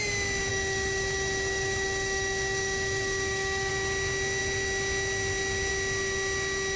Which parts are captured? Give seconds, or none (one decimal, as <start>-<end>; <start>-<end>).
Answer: 0.0-0.5; 3.7-6.8